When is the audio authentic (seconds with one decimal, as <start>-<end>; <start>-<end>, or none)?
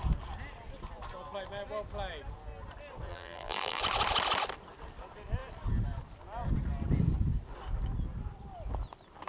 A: 0.0-3.1; 3.8-9.3